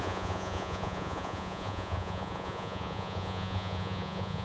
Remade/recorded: remade